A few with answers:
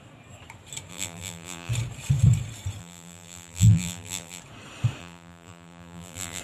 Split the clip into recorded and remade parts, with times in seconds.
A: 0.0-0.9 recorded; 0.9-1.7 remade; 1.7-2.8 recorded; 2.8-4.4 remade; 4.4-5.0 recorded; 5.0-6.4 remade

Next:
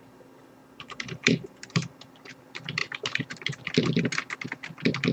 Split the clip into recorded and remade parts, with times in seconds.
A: 0.0-0.6 recorded; 0.6-2.4 remade; 2.4-5.1 recorded

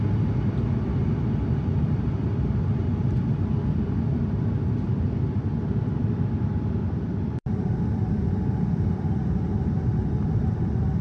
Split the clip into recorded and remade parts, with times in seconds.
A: 0.0-5.6 recorded; 5.6-6.3 remade; 6.3-6.8 recorded; 6.8-10.6 remade; 10.6-11.0 recorded

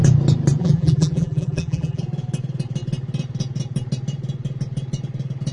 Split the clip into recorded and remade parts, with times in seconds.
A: 0.0-0.6 recorded; 0.6-2.0 remade; 2.0-5.5 recorded